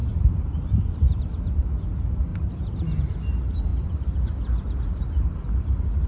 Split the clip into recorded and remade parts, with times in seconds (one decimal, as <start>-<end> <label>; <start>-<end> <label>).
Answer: 0.0-1.2 remade; 1.2-2.3 recorded; 2.3-3.0 remade; 3.0-3.7 recorded; 3.7-6.1 remade

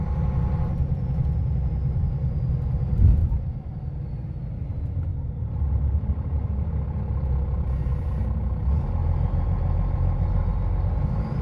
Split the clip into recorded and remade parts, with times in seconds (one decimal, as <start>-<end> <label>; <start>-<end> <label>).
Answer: 0.0-3.2 recorded; 3.2-4.4 remade; 4.4-5.1 recorded; 5.1-6.1 remade; 6.1-9.0 recorded; 9.0-10.5 remade; 10.5-11.4 recorded

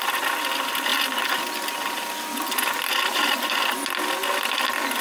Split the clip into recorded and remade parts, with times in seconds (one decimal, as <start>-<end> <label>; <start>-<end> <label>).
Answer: 0.0-3.1 recorded; 3.1-3.7 remade; 3.7-5.0 recorded

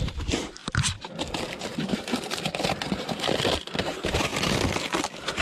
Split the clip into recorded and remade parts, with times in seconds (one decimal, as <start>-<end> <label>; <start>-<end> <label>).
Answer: 0.0-0.6 remade; 0.6-1.2 recorded; 1.2-4.3 remade; 4.3-5.4 recorded

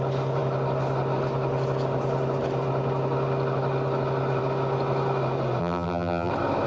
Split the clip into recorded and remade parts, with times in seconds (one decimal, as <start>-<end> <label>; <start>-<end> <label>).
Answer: 0.0-5.6 recorded; 5.6-6.3 remade; 6.3-6.7 recorded

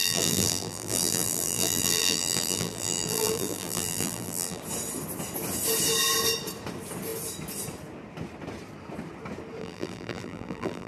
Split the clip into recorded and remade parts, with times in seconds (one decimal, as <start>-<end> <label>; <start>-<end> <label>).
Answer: 0.0-4.6 remade; 4.6-9.6 recorded; 9.6-10.9 remade